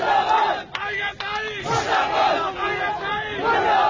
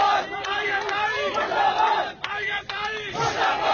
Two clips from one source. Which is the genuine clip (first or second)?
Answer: first